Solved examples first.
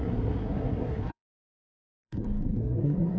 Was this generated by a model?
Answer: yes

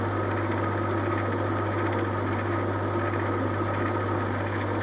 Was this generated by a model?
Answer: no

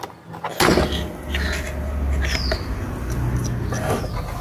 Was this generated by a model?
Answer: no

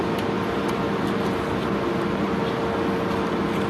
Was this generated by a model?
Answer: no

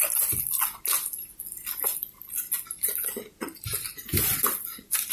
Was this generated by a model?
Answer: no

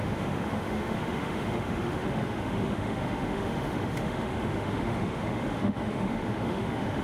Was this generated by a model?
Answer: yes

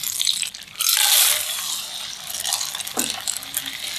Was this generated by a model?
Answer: no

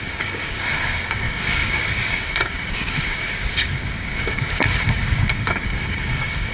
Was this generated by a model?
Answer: yes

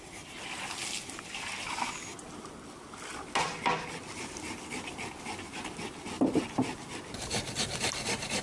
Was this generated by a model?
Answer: no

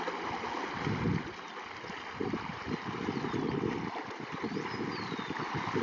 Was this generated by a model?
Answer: no